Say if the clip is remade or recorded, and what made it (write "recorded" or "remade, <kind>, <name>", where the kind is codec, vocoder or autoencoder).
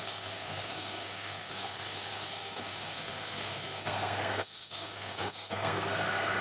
remade, codec, SNAC